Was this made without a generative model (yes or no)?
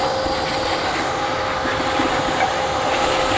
yes